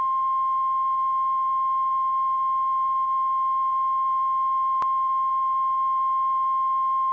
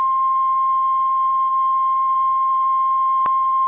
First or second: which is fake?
second